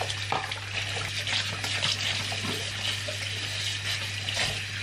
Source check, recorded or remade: recorded